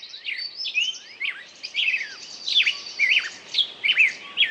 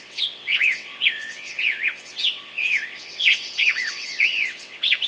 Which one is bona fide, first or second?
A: first